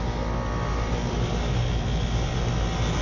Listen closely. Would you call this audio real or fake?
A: real